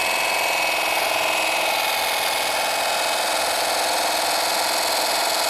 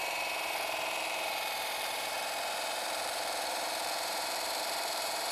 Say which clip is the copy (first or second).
second